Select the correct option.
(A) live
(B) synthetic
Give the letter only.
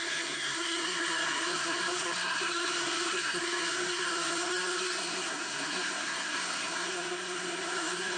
B